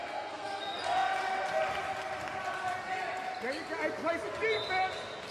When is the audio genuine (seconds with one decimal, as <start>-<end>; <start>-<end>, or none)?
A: 0.6-5.3